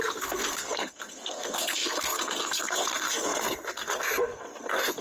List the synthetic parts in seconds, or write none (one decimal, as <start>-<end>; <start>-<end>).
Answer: 0.0-5.0